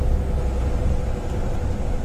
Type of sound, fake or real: real